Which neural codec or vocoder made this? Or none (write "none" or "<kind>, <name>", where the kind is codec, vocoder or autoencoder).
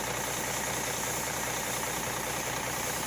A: none